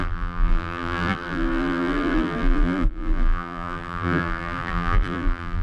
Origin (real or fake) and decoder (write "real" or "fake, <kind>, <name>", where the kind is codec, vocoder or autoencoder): fake, vocoder, BigVGAN v2